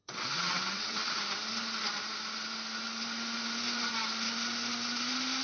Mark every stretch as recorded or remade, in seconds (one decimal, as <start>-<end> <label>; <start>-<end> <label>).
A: 0.0-1.2 remade; 1.2-5.4 recorded